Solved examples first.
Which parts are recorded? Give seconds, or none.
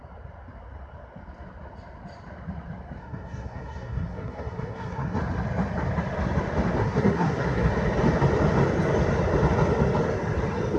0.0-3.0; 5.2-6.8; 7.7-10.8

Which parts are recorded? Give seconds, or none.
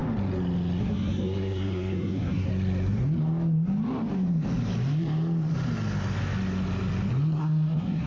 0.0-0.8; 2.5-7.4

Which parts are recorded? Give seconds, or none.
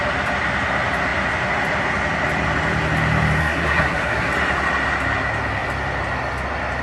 0.0-3.4; 4.3-6.8